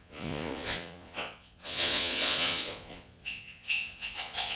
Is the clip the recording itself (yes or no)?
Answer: no